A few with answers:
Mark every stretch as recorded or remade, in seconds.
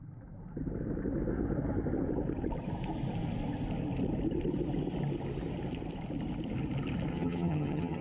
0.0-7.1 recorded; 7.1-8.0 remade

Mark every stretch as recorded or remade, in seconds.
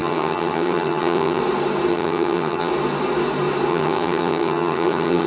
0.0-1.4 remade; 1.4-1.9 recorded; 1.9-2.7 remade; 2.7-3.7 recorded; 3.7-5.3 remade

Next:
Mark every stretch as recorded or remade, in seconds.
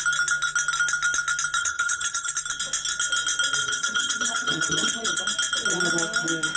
0.0-1.6 recorded; 1.6-2.3 remade; 2.3-3.6 recorded; 3.6-5.2 remade; 5.2-6.6 recorded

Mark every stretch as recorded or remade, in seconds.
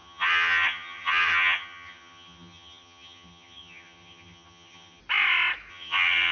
0.0-5.0 remade; 5.0-5.7 recorded; 5.7-6.3 remade